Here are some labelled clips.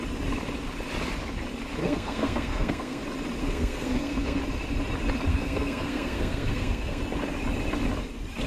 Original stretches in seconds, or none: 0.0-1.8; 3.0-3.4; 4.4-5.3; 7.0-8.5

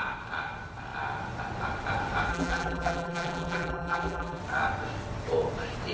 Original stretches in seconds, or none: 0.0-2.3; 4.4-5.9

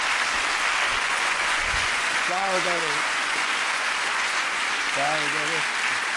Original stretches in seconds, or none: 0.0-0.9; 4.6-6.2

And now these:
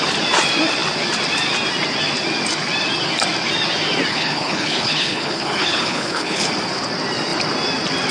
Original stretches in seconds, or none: 0.0-4.1; 6.5-8.1

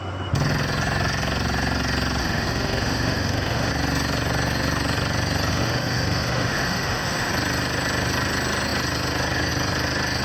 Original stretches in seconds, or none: 0.0-2.2; 3.7-5.5; 7.3-10.2

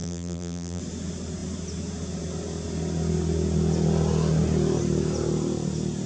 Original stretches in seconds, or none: 0.8-6.1

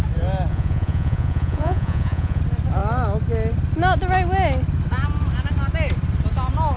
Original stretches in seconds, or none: 0.0-0.5; 2.4-6.8

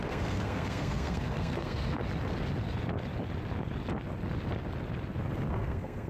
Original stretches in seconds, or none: 2.0-5.5